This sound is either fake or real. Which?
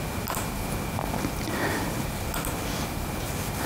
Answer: real